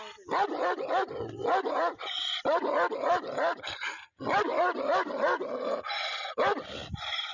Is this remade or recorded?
recorded